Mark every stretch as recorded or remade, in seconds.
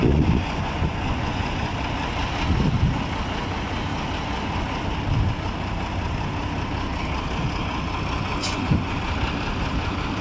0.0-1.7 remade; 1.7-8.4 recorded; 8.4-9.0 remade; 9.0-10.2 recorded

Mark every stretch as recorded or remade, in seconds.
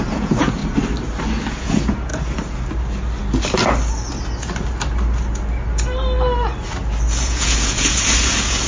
0.0-0.6 remade; 0.6-1.5 recorded; 1.5-2.1 remade; 2.1-7.1 recorded; 7.1-8.7 remade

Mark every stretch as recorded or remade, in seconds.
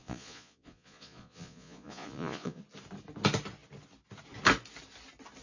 0.0-2.6 remade; 2.6-5.4 recorded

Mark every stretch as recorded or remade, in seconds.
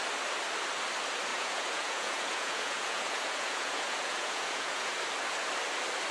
0.0-1.3 recorded; 1.3-5.0 remade; 5.0-6.1 recorded